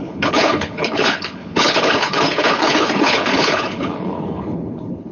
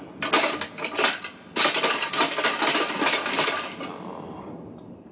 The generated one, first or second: first